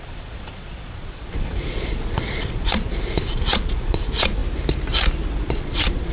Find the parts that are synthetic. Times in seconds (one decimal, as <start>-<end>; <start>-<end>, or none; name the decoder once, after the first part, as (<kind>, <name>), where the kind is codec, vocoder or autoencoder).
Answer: 0.0-4.4 (vocoder, Vocos); 5.3-6.1